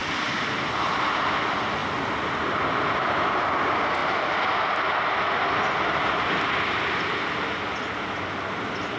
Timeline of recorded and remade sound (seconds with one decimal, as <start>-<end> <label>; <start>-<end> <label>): 0.0-9.0 recorded